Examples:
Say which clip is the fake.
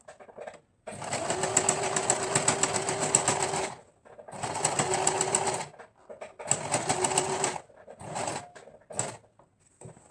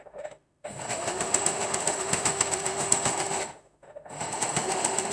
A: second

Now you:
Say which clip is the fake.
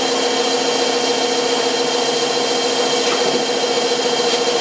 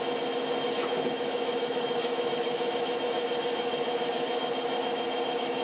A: second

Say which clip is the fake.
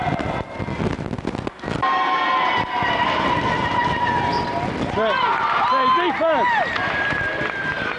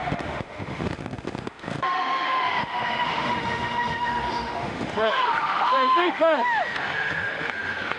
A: second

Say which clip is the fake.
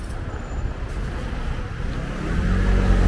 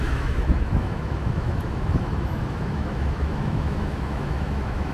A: second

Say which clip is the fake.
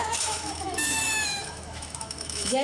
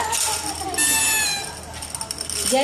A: first